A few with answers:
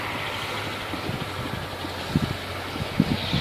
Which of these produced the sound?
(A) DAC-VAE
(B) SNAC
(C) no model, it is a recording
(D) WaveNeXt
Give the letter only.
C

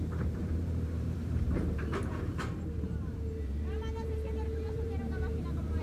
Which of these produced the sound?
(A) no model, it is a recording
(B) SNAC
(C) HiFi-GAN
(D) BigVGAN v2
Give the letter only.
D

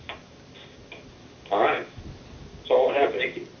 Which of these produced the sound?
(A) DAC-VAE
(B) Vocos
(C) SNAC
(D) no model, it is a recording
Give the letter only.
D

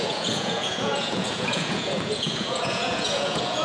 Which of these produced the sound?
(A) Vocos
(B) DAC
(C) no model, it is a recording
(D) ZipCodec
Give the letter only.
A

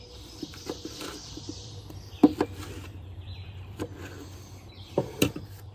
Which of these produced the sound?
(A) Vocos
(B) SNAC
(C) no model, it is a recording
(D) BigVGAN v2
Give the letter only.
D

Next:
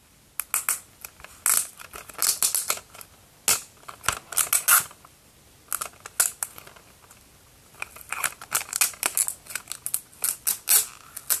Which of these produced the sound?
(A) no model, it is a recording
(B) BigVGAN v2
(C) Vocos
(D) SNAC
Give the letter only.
A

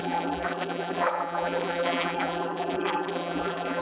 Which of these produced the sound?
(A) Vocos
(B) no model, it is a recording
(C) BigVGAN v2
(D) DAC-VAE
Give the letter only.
C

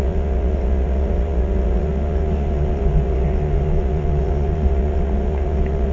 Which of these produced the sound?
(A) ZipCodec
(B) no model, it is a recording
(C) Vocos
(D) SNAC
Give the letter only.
C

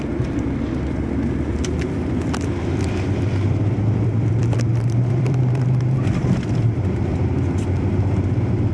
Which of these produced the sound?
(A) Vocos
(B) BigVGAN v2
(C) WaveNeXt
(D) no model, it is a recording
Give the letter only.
B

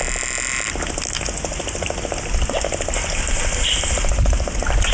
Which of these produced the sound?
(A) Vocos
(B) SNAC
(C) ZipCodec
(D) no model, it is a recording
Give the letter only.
D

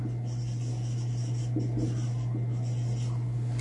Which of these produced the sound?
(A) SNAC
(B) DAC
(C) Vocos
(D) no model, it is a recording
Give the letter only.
D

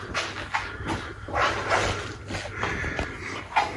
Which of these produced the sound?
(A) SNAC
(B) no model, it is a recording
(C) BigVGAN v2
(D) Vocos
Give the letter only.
B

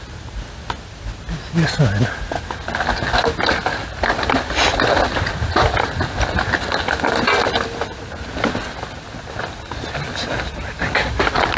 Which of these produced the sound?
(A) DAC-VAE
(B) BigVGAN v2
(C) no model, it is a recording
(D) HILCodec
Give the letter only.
C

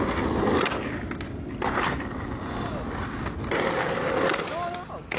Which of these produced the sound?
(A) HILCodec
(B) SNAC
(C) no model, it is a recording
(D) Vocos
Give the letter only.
C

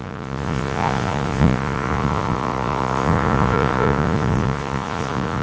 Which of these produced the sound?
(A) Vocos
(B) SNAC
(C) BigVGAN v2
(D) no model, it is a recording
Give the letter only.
A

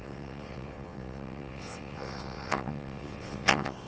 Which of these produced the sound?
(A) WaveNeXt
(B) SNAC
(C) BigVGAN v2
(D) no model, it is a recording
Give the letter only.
A